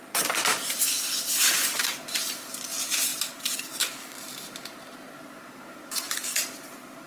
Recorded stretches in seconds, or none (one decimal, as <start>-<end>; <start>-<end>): 4.9-5.8